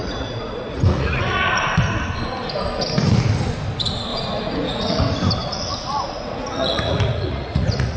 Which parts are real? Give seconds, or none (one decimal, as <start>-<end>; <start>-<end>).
1.6-4.1; 5.0-5.4